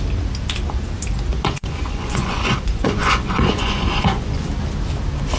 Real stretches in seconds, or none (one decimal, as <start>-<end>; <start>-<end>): 0.0-1.3; 4.5-5.4